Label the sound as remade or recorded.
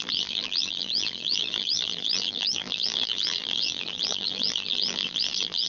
remade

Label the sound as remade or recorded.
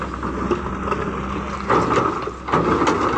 recorded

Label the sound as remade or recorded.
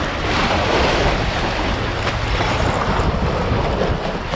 recorded